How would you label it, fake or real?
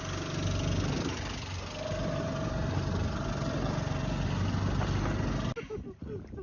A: real